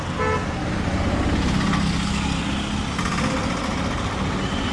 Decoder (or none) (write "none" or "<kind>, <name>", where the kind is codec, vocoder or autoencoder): none